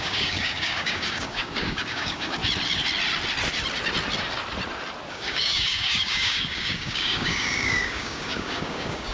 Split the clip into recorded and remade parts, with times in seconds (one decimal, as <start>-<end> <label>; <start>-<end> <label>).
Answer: 0.0-2.4 remade; 2.4-5.1 recorded; 5.1-9.1 remade